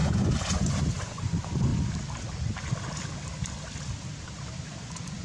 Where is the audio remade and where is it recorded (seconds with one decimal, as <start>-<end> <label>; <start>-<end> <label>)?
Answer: 0.0-1.7 remade; 1.7-4.8 recorded; 4.8-5.2 remade